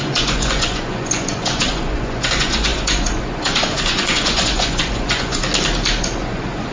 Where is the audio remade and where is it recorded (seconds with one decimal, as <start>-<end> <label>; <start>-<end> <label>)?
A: 0.0-5.4 remade; 5.4-6.0 recorded; 6.0-6.7 remade